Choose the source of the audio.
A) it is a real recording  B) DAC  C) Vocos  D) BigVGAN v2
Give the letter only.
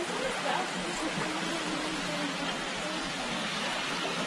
A